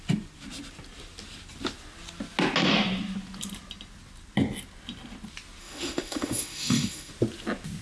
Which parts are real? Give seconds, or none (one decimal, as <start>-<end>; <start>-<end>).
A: 0.0-5.6; 7.1-7.8